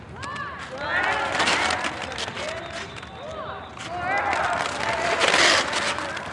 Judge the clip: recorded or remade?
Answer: recorded